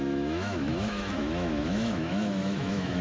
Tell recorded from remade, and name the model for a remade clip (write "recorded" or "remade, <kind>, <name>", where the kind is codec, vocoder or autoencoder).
remade, autoencoder, DAC-VAE